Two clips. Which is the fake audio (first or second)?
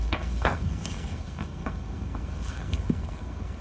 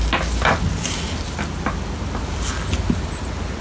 first